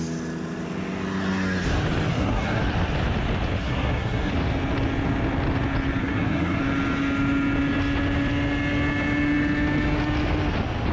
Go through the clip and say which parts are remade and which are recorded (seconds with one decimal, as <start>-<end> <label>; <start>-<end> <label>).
0.0-2.1 recorded; 2.1-2.6 remade; 2.6-3.6 recorded; 3.6-4.3 remade; 4.3-6.0 recorded; 6.0-6.6 remade; 6.6-10.9 recorded